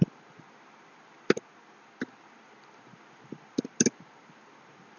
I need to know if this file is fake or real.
real